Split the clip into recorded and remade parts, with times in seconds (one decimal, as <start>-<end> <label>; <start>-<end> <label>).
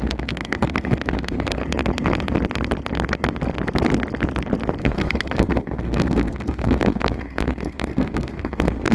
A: 0.0-1.6 remade; 1.6-4.8 recorded; 4.8-8.9 remade